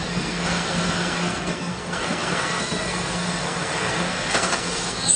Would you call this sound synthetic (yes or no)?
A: yes